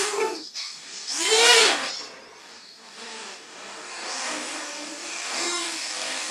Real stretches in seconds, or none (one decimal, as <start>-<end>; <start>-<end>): 1.9-2.4